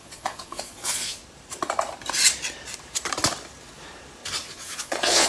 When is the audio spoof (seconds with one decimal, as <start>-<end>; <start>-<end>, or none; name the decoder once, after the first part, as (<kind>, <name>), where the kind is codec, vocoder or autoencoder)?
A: 0.0-1.2 (vocoder, Vocos); 4.4-5.3